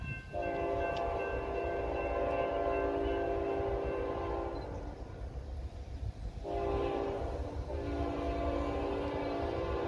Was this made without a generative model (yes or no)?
yes